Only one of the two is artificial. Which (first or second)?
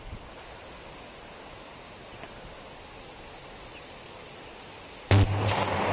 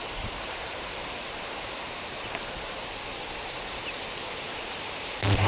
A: second